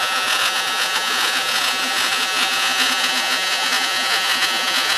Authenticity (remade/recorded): remade